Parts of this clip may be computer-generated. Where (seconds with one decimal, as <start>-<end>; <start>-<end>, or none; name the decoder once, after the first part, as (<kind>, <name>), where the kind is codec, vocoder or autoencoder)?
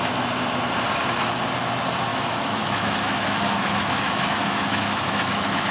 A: 2.1-5.7 (autoencoder, DAC-VAE)